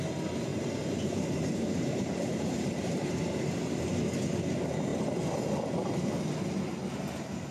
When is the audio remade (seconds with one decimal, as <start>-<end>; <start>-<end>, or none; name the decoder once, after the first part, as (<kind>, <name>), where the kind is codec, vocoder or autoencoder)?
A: 0.5-3.5 (vocoder, BigVGAN v2)